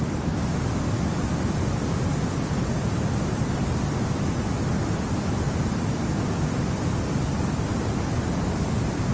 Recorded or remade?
recorded